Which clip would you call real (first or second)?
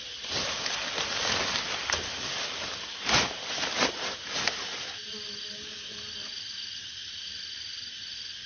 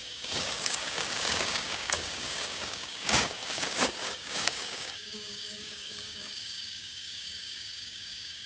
first